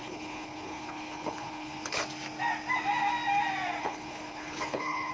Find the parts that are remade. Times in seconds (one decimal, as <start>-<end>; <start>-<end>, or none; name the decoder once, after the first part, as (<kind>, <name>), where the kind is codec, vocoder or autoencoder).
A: 0.0-2.0 (codec, HILCodec); 3.8-5.1